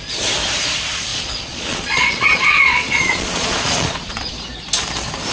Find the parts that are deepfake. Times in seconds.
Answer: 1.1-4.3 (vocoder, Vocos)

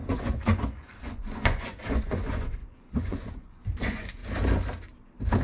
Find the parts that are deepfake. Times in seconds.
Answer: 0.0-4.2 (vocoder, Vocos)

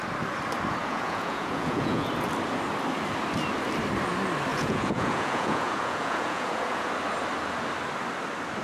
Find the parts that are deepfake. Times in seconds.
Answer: 0.8-2.1 (vocoder, Vocos); 4.5-6.9

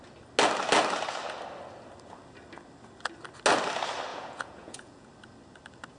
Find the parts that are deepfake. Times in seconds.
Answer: 4.1-5.1 (vocoder, Vocos)

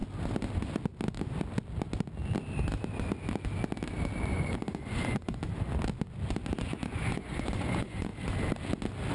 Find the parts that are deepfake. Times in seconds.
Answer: 4.3-5.4 (vocoder, Vocos); 6.6-8.1

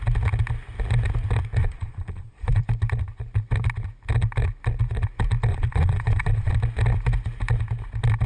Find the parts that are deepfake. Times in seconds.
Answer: 1.6-2.6 (vocoder, Vocos); 5.5-6.5